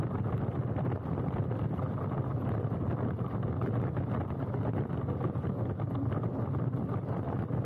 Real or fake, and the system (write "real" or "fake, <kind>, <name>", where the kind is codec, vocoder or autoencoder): real